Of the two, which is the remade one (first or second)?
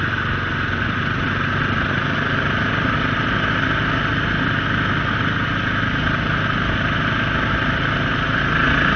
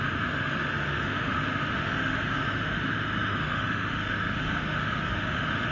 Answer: second